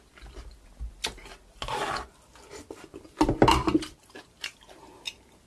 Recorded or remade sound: recorded